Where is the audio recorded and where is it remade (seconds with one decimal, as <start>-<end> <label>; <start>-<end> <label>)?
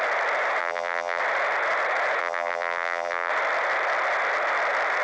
0.0-0.6 recorded; 0.6-1.2 remade; 1.2-2.2 recorded; 2.2-3.3 remade; 3.3-5.0 recorded